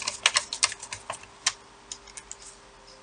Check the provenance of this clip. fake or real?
real